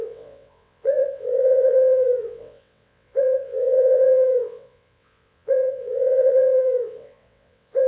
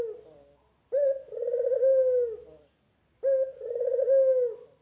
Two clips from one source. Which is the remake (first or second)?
first